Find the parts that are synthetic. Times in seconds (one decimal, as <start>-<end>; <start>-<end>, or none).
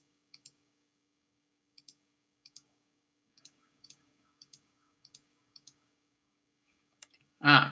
0.0-7.7